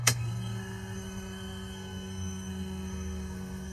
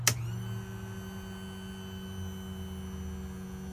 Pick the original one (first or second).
second